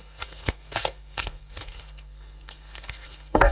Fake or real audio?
fake